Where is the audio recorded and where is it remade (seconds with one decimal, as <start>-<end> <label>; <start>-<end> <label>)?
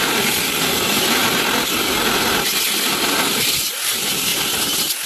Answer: 0.0-1.2 remade; 1.2-3.3 recorded; 3.3-4.3 remade; 4.3-5.1 recorded